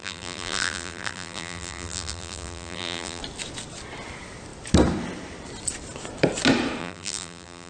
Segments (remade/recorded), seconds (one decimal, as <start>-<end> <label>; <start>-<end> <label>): 0.0-3.2 remade; 3.2-6.8 recorded; 6.8-7.7 remade